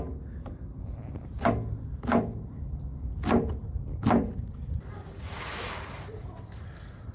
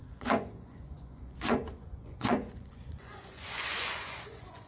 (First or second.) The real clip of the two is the first